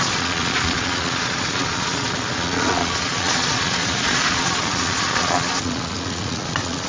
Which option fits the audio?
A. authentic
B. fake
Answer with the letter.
B